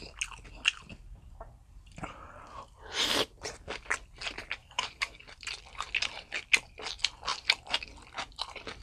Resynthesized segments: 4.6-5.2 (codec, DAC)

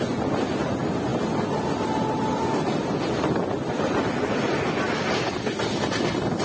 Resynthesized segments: none

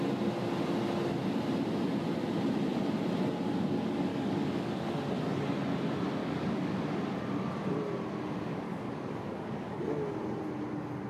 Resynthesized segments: 4.1-4.7 (codec, DAC); 6.2-6.8; 8.5-9.8

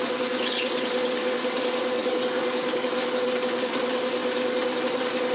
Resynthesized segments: 2.0-2.9 (codec, DAC)

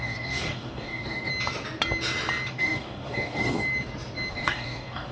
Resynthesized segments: 0.0-1.3 (codec, DAC); 2.5-3.6; 4.3-5.1

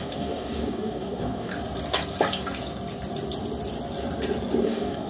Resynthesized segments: 0.0-1.5 (codec, DAC); 4.6-5.1

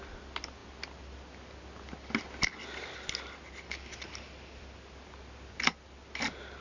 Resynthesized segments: none

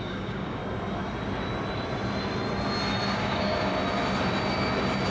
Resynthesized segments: 0.0-0.6 (codec, DAC); 3.1-3.7